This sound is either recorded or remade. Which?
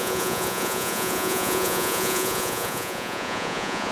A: remade